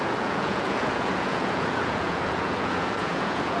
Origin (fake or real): fake